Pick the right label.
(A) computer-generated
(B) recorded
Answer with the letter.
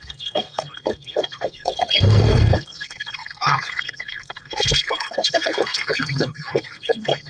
A